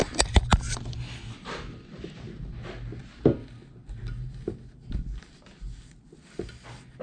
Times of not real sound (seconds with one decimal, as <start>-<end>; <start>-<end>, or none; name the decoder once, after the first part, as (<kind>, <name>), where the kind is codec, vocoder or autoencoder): none